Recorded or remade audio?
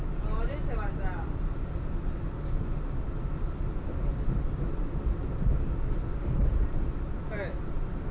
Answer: recorded